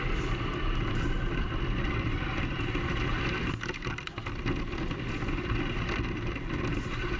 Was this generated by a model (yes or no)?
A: no